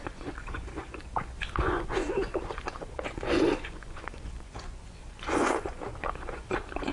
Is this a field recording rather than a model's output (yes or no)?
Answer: no